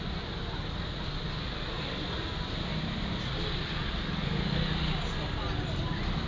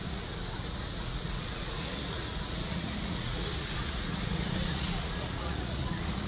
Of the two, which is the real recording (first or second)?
first